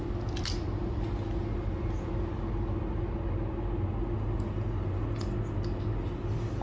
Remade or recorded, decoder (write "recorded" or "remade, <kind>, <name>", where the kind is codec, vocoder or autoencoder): recorded